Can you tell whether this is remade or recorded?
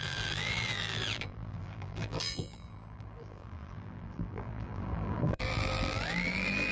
remade